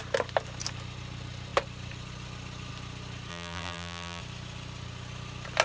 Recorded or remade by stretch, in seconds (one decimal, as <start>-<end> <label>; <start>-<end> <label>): 0.0-3.3 recorded; 3.3-4.2 remade; 4.2-5.6 recorded